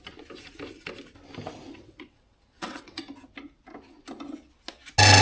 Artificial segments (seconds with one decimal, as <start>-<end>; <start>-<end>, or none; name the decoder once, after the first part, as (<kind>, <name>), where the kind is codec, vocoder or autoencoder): 1.7-3.0 (vocoder, WaveNeXt)